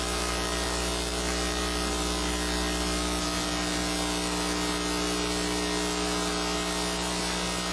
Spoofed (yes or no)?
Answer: no